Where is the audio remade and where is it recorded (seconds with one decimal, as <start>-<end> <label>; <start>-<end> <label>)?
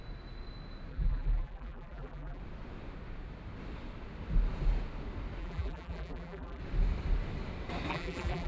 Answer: 0.0-0.9 recorded; 0.9-2.4 remade; 2.4-5.4 recorded; 5.4-6.6 remade; 6.6-7.9 recorded; 7.9-8.5 remade